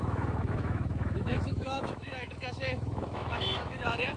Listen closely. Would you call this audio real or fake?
fake